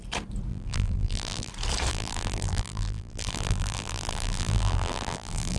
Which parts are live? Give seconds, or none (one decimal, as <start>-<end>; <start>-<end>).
0.0-0.5; 1.5-1.9